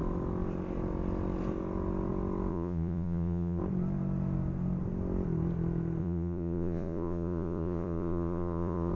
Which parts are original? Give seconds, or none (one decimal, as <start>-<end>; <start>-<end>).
0.0-2.5; 3.6-6.0